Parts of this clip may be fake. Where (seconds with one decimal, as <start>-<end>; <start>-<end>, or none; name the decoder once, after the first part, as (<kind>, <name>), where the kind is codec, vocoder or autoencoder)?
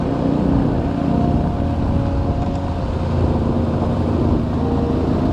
none